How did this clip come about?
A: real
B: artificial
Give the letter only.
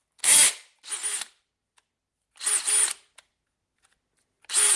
A